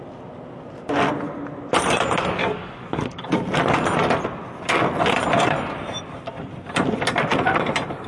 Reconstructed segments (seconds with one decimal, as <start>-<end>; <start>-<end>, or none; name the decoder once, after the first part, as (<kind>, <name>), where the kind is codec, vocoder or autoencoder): 2.4-3.4 (codec, DAC)

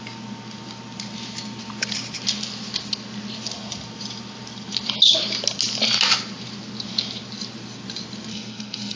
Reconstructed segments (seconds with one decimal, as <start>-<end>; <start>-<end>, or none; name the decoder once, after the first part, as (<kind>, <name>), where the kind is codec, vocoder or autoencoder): 8.3-9.0 (codec, SNAC)